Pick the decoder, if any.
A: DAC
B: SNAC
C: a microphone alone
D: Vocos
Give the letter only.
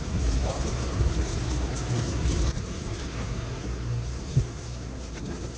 B